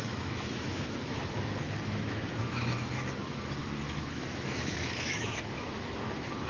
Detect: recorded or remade remade